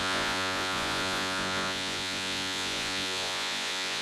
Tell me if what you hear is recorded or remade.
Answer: remade